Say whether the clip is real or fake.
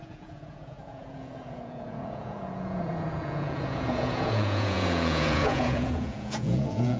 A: fake